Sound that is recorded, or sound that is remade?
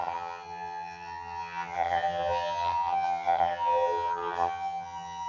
remade